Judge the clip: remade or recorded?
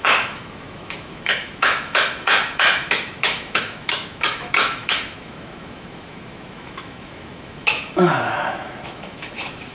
remade